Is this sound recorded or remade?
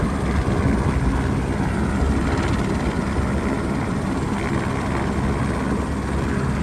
recorded